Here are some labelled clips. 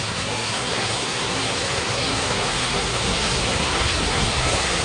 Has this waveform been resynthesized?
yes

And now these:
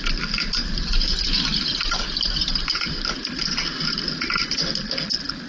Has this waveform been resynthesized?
no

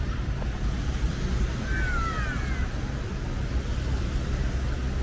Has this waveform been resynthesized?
no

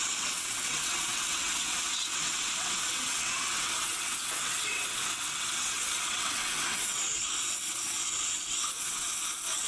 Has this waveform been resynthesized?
yes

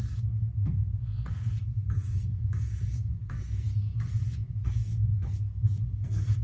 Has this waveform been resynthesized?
yes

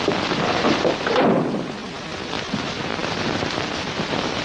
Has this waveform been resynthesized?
no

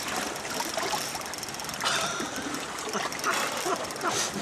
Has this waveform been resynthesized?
yes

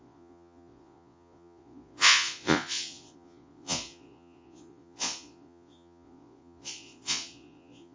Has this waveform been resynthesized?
yes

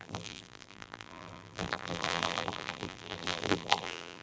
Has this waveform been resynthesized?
yes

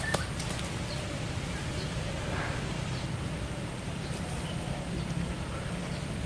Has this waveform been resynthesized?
yes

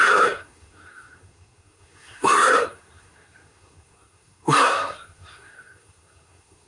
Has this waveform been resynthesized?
yes